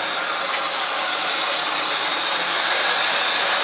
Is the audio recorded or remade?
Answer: recorded